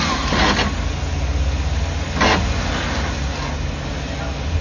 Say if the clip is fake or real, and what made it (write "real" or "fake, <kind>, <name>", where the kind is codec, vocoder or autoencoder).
real